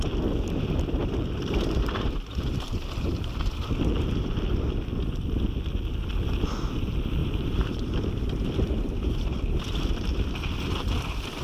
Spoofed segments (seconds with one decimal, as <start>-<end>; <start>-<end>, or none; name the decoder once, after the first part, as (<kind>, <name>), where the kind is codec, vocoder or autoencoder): 1.0-3.6 (vocoder, BigVGAN v2); 7.2-10.3